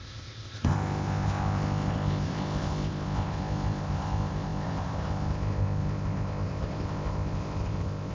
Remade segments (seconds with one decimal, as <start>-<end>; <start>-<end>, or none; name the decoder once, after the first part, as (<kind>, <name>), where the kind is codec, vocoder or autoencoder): 0.0-8.1 (codec, ZipCodec)